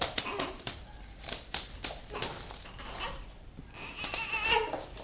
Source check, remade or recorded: recorded